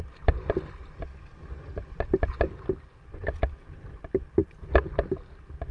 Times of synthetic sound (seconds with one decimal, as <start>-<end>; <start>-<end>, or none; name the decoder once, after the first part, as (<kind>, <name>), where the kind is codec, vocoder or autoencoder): none